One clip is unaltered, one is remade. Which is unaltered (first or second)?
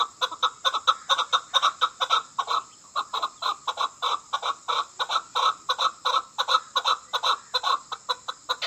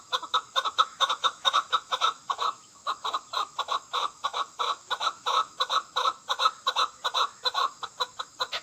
first